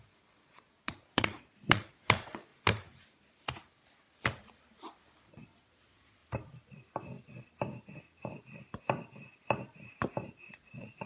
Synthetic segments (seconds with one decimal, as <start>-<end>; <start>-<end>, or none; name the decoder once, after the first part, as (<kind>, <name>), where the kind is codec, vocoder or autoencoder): 0.0-2.5 (vocoder, Vocos); 5.2-6.2; 10.5-11.1